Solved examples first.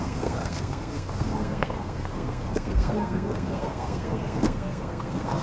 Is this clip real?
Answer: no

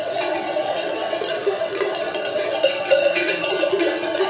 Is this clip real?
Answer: no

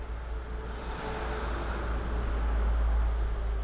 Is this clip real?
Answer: yes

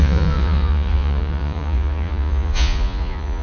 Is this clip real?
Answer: no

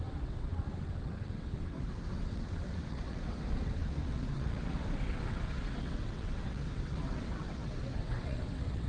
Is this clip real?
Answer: no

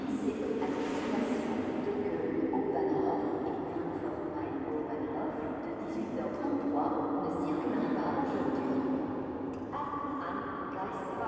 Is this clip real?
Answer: yes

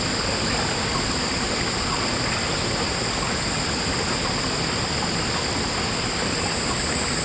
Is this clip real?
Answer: yes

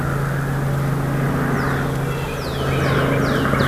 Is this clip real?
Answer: yes